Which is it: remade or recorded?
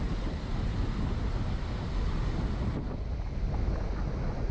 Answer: recorded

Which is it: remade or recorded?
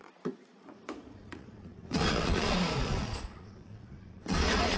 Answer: remade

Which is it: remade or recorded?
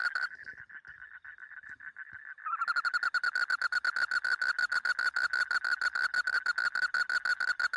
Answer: recorded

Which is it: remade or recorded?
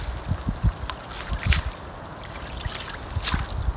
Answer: recorded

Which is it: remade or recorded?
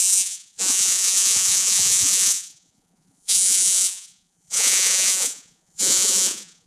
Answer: remade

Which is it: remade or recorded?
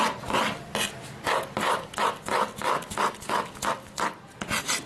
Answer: recorded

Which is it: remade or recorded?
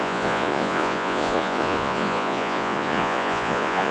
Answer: remade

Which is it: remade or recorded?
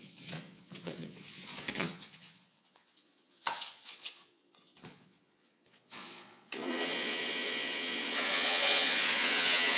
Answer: remade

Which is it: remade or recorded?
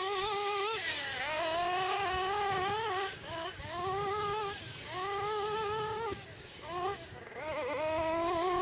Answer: remade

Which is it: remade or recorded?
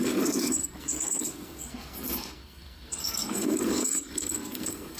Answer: remade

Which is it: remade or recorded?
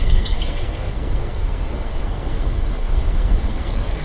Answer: remade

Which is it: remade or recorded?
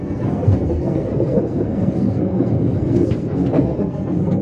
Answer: remade